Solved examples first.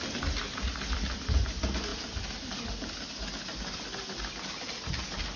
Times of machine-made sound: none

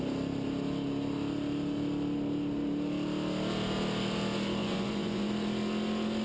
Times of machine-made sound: 4.6-5.3 (vocoder, Vocos)

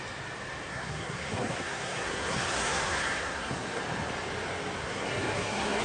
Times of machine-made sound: 0.7-3.8 (codec, SNAC); 4.8-5.8

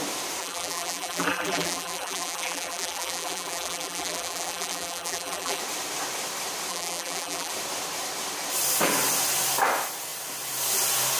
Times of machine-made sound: 0.4-5.6 (vocoder, BigVGAN v2); 6.7-7.5

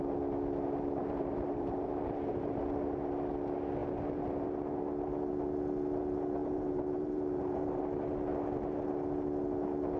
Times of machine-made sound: 1.0-2.6 (vocoder, BigVGAN v2); 6.4-7.6

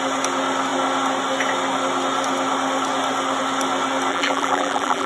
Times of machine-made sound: 4.1-5.1 (vocoder, BigVGAN v2)